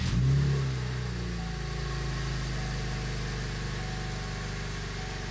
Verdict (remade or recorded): recorded